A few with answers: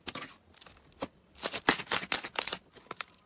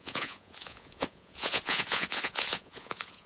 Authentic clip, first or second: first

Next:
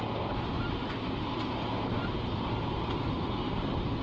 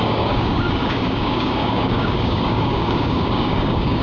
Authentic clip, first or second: first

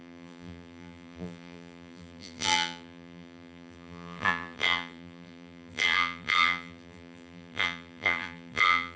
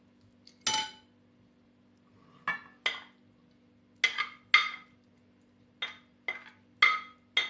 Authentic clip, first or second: second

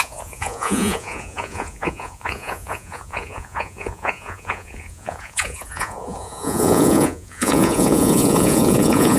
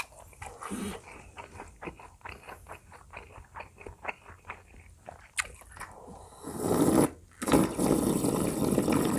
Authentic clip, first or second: second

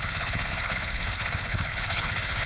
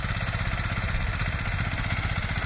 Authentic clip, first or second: second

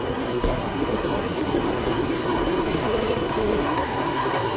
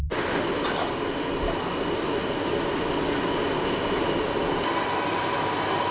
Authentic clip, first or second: second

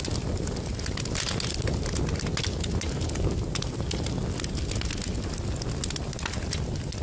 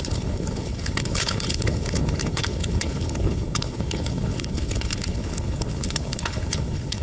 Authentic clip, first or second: first